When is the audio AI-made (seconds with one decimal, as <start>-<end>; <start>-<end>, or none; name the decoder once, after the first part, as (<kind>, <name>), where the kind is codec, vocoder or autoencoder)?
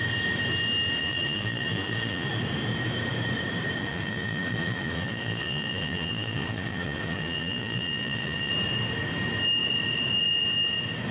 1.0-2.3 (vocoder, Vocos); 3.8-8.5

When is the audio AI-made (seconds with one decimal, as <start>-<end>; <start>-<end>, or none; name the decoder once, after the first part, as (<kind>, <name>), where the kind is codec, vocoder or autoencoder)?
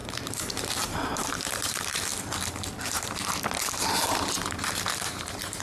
0.0-2.1 (vocoder, BigVGAN v2); 4.9-5.6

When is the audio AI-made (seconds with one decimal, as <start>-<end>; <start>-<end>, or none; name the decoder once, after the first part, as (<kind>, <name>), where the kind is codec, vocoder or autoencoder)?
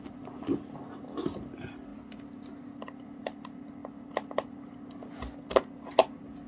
none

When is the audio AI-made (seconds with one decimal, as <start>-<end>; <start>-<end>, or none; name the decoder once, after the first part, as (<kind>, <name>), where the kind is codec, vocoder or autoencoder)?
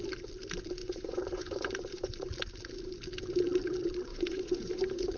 0.8-2.3 (vocoder, Vocos); 4.1-5.2